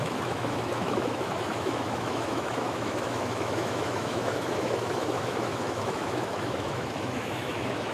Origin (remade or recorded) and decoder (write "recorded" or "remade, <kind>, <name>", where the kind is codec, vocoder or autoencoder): remade, autoencoder, DAC-VAE